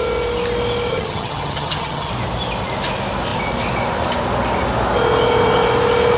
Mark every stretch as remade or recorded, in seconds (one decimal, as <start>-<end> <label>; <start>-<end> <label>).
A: 0.0-0.9 recorded; 0.9-2.1 remade; 2.1-6.2 recorded